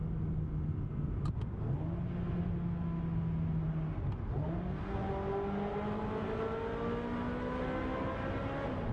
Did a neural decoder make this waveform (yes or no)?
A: no